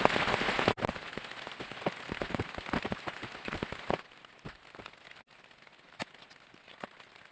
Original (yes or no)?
yes